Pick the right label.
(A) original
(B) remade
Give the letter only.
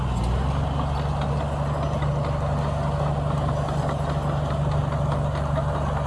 A